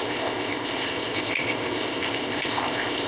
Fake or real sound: fake